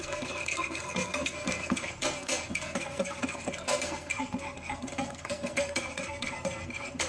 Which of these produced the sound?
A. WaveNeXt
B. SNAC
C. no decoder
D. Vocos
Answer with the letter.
B